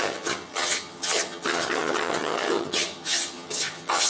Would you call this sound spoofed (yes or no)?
yes